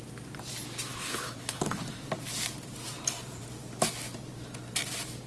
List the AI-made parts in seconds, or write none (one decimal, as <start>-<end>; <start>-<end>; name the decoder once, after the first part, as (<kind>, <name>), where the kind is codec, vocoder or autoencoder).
0.9-1.8 (codec, HILCodec)